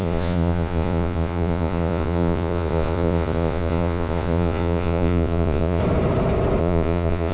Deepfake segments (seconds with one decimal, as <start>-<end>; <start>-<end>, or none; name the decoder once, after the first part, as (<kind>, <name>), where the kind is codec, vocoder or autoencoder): 0.0-5.8 (vocoder, Vocos); 6.6-7.3